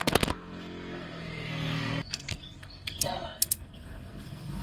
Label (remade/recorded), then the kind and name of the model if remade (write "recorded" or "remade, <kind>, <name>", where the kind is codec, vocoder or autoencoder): remade, codec, SNAC